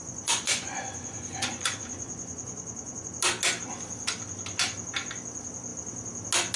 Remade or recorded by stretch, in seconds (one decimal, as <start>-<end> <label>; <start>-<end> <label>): 0.0-3.2 remade; 3.2-6.6 recorded